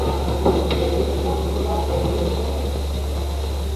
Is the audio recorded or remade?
recorded